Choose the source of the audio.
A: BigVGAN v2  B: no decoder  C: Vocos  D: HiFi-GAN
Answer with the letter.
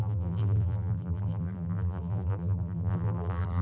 A